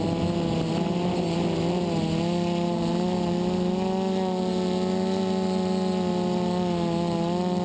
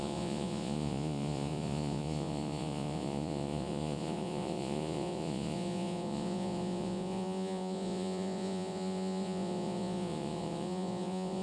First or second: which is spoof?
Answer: second